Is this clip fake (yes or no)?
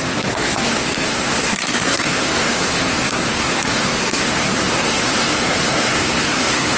yes